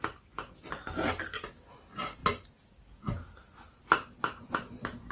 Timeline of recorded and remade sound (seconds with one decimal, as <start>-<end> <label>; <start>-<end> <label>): 0.0-5.1 recorded